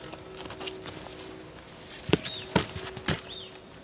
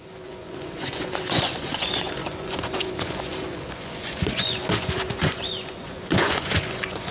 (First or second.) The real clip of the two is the first